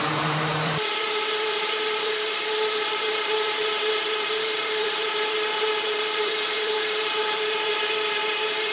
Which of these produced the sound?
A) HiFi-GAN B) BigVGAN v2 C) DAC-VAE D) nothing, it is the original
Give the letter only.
B